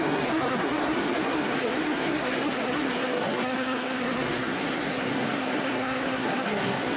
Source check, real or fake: fake